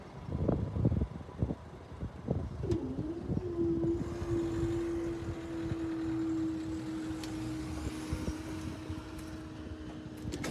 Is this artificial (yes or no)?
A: no